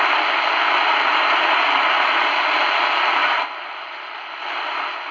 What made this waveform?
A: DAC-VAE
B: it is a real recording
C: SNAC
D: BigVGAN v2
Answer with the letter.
B